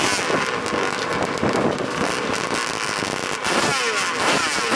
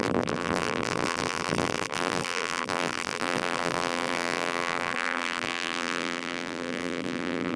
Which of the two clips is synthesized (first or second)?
second